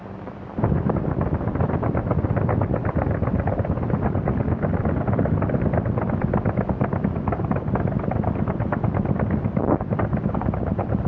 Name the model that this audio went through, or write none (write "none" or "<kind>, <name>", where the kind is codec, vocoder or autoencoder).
vocoder, BigVGAN v2